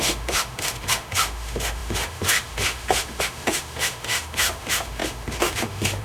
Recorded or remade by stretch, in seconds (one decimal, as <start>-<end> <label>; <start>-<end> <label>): 0.0-6.0 remade